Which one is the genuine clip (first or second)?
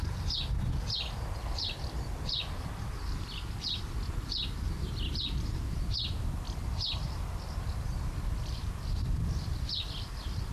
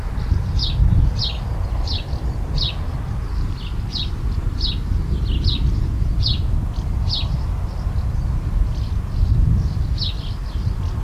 second